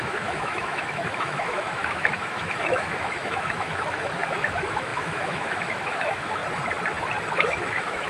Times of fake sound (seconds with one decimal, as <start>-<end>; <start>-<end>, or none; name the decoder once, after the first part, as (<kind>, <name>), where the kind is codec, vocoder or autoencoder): 0.0-6.4 (autoencoder, DAC-VAE); 7.3-8.1